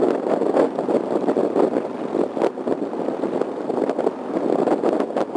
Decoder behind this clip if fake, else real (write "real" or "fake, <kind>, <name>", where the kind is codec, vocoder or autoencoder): real